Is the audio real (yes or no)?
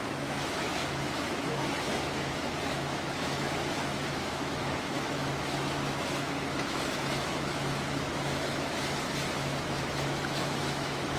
no